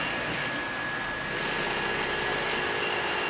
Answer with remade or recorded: recorded